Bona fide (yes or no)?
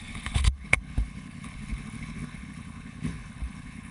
no